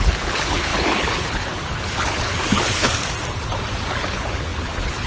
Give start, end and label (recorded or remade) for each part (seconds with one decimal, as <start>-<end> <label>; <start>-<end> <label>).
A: 0.0-3.0 remade; 3.0-3.9 recorded; 3.9-5.1 remade